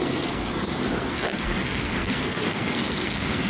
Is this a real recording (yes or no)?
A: no